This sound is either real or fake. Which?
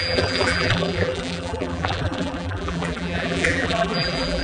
fake